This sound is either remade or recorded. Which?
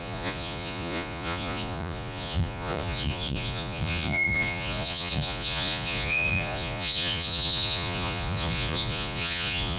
remade